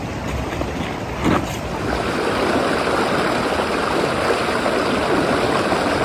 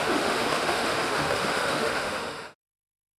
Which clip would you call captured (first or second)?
first